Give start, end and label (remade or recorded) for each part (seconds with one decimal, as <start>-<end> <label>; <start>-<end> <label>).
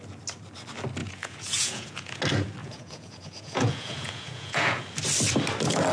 0.0-1.0 recorded; 1.0-2.2 remade; 2.2-2.6 recorded; 2.6-4.8 remade; 4.8-5.9 recorded